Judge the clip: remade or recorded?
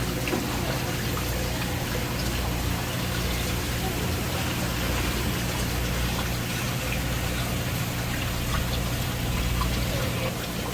recorded